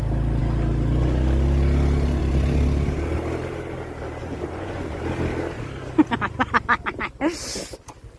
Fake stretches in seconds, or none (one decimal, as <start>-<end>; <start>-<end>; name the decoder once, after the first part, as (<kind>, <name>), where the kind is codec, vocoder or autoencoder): 4.2-5.0 (vocoder, Vocos)